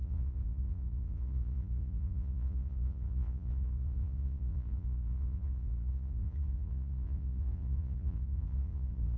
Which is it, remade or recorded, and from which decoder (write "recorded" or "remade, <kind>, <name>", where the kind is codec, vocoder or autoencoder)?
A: remade, vocoder, Vocos